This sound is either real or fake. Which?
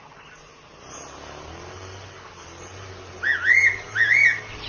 real